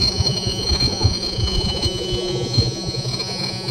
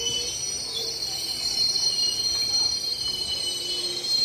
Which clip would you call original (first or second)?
second